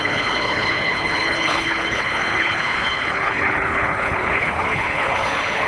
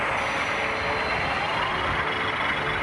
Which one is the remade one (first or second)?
first